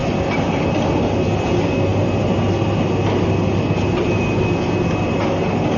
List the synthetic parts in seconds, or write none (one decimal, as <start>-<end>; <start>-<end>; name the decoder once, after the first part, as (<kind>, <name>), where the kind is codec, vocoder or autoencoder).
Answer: none